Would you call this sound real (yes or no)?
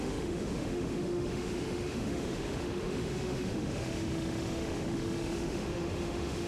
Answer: no